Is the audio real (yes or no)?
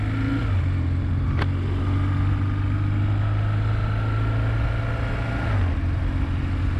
yes